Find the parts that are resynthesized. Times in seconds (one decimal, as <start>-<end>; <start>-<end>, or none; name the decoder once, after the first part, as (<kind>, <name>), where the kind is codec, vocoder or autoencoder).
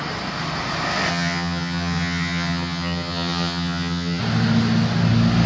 1.1-4.2 (vocoder, HiFi-GAN)